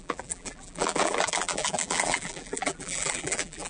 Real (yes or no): no